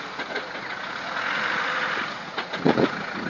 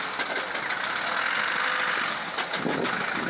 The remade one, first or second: first